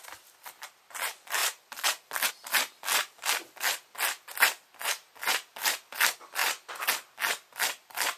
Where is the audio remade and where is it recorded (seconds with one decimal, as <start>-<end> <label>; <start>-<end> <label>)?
0.0-1.4 recorded; 1.4-2.3 remade; 2.3-6.4 recorded; 6.4-7.2 remade; 7.2-8.2 recorded